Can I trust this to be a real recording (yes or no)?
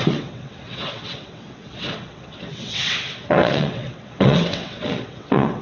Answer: no